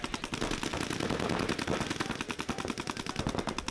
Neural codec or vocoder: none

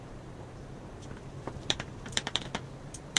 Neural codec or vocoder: vocoder, BigVGAN v2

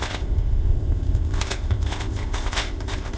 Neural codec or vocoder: codec, ZipCodec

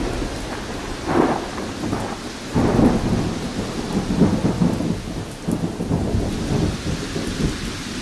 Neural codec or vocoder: none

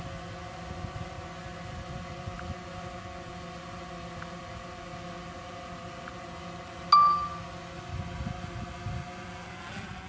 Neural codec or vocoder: none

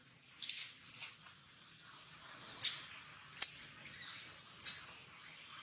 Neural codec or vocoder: none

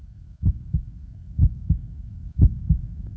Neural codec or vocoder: codec, SNAC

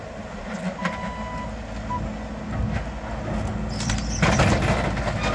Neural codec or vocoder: none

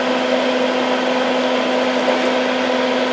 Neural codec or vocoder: none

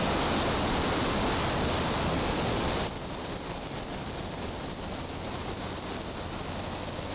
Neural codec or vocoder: none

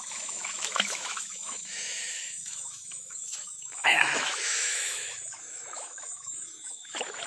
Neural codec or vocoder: autoencoder, DAC-VAE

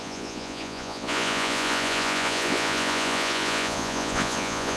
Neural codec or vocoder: vocoder, Vocos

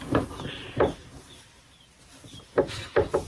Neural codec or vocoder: none